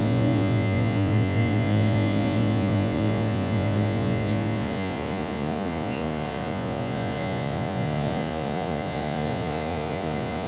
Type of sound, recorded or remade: remade